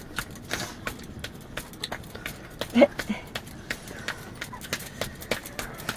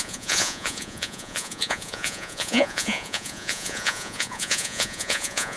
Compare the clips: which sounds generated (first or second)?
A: second